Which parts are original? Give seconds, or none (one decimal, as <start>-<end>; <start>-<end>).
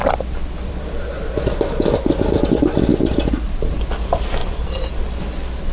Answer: 2.3-2.9; 3.7-4.4; 4.9-5.7